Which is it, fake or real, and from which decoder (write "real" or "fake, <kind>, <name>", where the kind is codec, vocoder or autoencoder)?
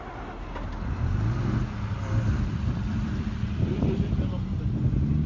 real